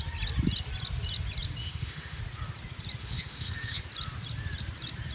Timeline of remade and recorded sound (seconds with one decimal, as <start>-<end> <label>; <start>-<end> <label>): 0.0-1.6 recorded; 1.6-2.2 remade; 2.2-3.0 recorded; 3.0-3.8 remade; 3.8-5.1 recorded